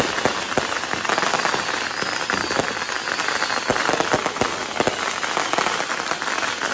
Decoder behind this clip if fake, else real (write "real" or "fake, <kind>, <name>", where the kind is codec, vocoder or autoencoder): real